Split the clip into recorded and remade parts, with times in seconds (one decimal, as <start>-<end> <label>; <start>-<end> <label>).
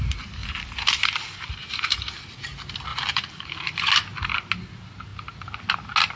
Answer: 0.0-0.4 recorded; 0.4-2.1 remade; 2.1-2.9 recorded; 2.9-3.9 remade; 3.9-6.2 recorded